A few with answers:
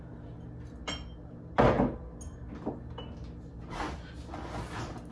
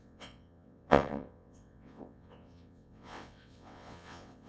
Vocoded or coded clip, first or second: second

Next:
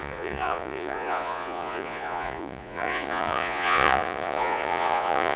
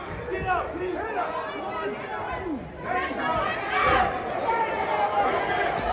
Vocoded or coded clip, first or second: first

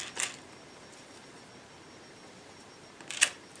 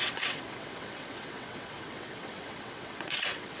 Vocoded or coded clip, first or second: second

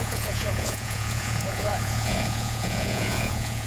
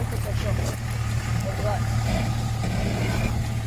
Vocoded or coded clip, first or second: first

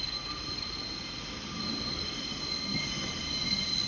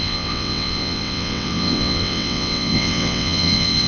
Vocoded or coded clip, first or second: second